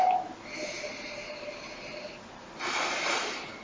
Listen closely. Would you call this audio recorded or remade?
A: recorded